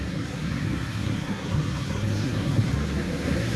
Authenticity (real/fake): fake